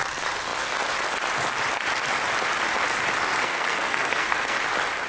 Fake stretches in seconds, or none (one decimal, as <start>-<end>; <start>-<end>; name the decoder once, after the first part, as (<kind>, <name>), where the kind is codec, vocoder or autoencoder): 3.3-4.6 (codec, SNAC)